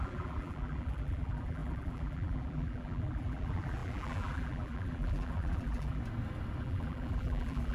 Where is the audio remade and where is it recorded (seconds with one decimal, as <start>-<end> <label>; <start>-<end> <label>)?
0.0-6.0 remade; 6.0-6.6 recorded; 6.6-7.7 remade